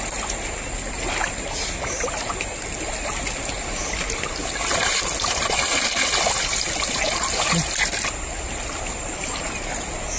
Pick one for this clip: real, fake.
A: real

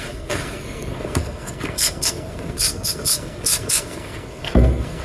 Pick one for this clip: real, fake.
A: fake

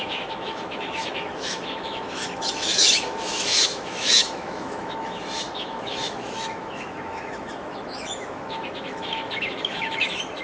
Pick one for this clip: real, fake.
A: fake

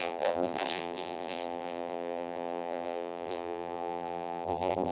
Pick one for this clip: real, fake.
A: fake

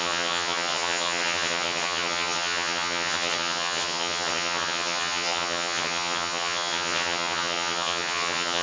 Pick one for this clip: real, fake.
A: fake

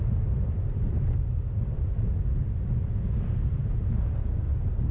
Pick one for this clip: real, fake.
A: real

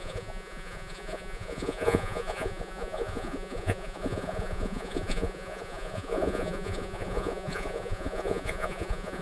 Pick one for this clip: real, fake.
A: fake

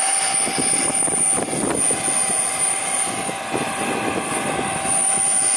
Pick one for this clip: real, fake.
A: fake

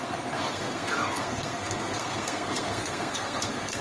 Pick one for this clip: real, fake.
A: fake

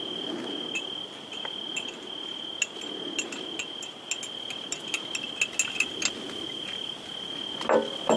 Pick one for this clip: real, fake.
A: real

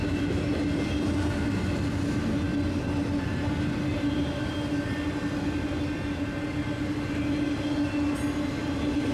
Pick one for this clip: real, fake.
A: real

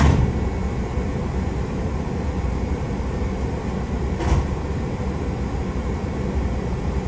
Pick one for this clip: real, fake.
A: real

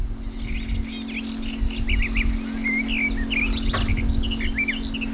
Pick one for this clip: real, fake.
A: real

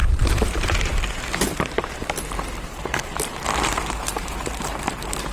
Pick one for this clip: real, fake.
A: fake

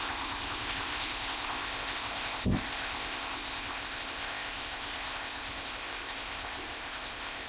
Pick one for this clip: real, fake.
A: fake